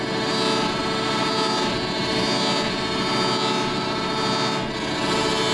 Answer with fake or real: real